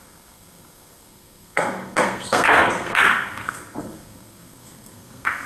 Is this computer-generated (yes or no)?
yes